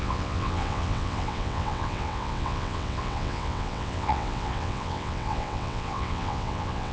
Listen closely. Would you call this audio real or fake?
fake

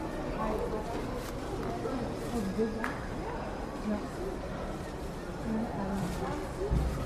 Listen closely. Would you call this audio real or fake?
real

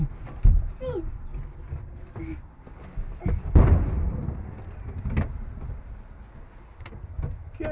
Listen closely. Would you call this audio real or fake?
real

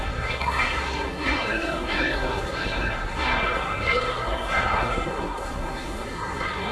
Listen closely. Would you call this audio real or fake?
fake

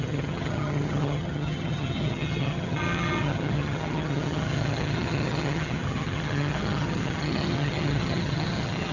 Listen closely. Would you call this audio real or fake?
fake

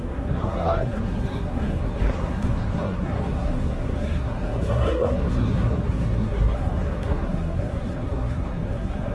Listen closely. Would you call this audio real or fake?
fake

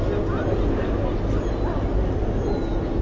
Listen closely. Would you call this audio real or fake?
real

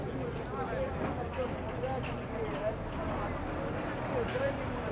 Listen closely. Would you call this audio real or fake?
real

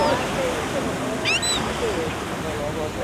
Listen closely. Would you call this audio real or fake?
real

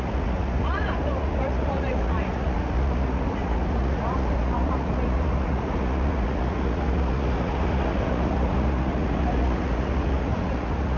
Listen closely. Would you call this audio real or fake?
fake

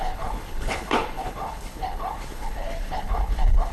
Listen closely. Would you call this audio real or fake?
fake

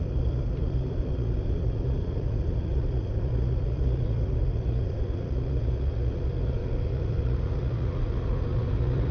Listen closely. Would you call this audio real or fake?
fake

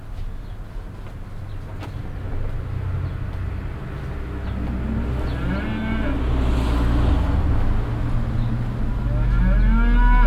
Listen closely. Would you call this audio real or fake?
real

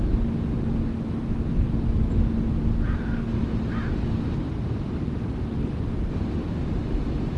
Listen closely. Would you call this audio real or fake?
real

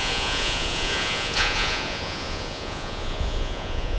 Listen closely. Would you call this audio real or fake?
fake